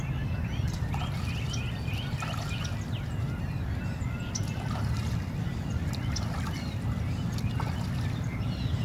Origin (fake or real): real